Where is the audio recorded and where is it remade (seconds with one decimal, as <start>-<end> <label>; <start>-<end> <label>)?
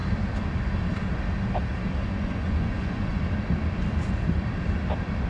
0.0-2.0 recorded; 2.0-3.2 remade; 3.2-5.3 recorded